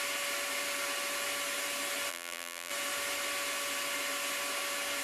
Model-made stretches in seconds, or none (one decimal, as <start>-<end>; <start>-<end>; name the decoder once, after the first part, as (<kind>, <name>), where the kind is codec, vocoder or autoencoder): 2.1-2.7 (vocoder, BigVGAN v2)